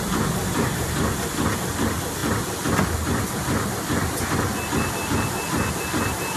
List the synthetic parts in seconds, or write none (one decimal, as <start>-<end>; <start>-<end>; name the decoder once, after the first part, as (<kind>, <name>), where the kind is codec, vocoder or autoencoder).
0.0-0.4 (vocoder, BigVGAN v2); 1.7-6.4